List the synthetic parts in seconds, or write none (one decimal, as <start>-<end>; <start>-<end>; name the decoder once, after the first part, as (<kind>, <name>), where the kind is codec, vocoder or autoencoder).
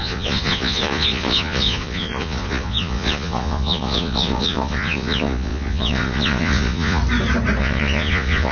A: 0.0-7.0 (vocoder, Vocos); 7.6-8.5